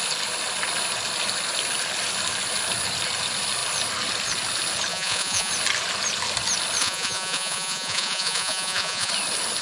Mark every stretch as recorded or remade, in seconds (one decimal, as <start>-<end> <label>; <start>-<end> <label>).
0.0-4.9 recorded; 4.9-5.5 remade; 5.5-6.8 recorded; 6.8-9.1 remade; 9.1-9.6 recorded